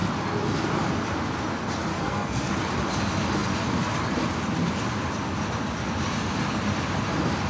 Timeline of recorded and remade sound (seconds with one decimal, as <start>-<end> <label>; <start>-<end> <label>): 0.0-1.9 recorded; 1.9-2.5 remade; 2.5-7.5 recorded